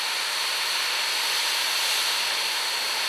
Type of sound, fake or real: real